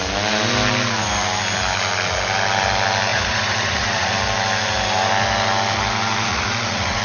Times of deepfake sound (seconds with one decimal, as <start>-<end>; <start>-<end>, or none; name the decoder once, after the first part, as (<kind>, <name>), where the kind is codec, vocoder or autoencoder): 3.1-4.1 (vocoder, Vocos); 6.3-7.0